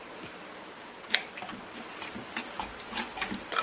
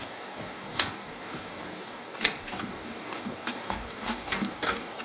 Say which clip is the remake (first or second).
second